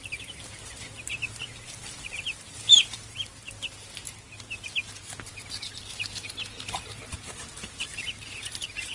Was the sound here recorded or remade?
remade